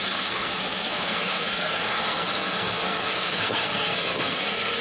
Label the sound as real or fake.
fake